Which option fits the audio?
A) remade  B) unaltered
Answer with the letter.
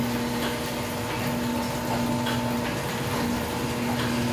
B